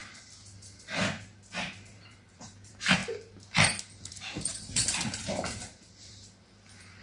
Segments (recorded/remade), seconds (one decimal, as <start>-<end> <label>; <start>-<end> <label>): 0.0-1.9 recorded; 1.9-3.0 remade; 3.0-4.1 recorded; 4.1-7.0 remade